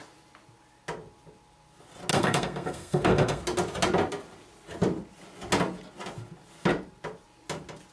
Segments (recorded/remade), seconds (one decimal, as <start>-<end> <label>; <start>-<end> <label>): 0.0-2.1 recorded; 2.1-3.4 remade; 3.4-7.9 recorded